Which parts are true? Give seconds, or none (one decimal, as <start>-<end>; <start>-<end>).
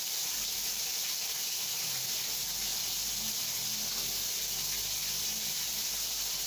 2.7-5.2; 5.7-6.5